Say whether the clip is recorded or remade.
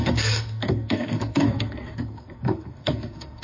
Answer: remade